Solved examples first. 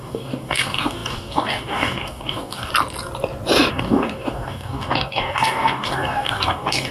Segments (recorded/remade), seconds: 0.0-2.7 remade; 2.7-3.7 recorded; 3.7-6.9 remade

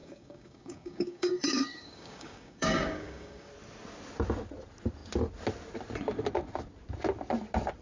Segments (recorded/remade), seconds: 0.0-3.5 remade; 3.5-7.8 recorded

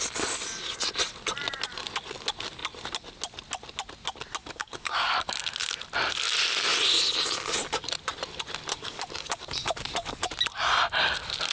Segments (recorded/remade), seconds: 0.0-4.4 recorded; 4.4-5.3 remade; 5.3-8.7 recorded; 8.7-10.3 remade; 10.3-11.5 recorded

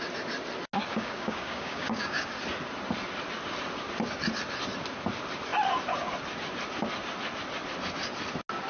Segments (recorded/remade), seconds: 0.0-0.9 recorded; 0.9-2.3 remade; 2.3-8.7 recorded